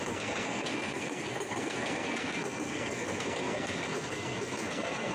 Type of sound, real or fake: fake